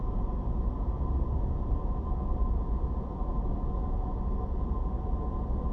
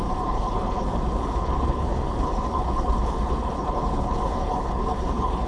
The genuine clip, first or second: first